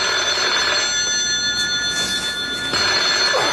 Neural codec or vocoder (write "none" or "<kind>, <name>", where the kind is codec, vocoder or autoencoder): none